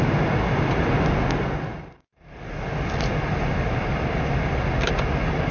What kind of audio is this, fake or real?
real